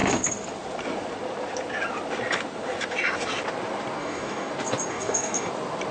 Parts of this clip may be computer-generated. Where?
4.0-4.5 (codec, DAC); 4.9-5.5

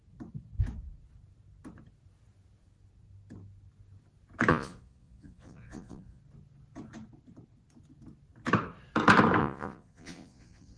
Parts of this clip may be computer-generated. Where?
4.5-6.2 (vocoder, Vocos); 9.4-10.8

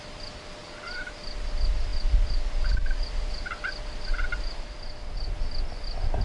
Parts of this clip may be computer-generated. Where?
none